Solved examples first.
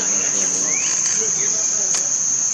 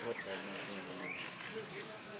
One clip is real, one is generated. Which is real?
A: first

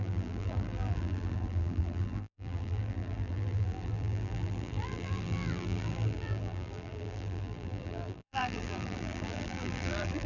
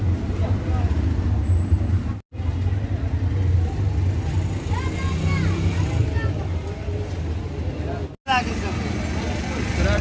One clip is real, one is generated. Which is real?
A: second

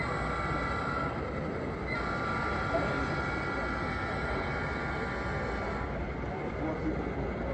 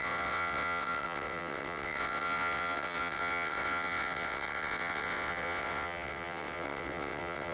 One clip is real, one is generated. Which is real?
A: first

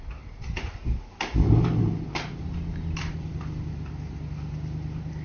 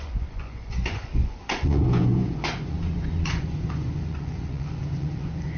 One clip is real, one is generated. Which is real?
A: first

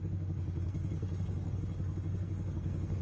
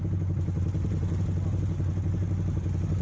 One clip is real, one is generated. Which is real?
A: second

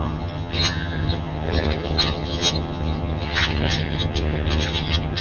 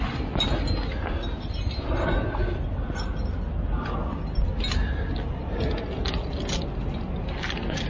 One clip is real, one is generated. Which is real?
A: second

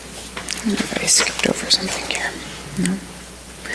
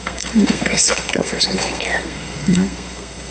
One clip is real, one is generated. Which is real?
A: first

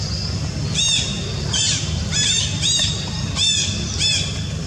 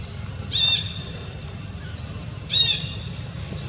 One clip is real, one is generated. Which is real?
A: first